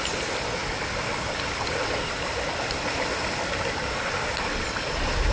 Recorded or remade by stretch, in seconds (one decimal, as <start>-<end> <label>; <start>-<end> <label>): 0.0-5.3 recorded